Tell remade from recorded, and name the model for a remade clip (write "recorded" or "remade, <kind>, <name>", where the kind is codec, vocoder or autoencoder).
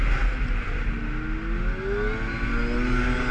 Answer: recorded